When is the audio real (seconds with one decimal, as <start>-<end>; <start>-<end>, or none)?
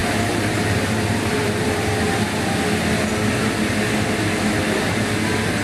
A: 1.9-5.6